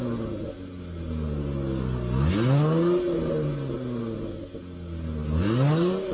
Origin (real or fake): real